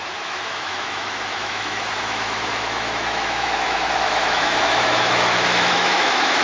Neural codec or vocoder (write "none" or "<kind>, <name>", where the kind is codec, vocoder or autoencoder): autoencoder, DAC-VAE